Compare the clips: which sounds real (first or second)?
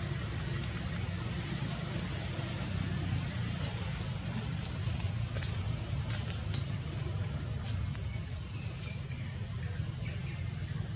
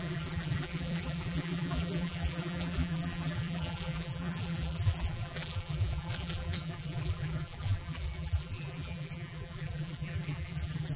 first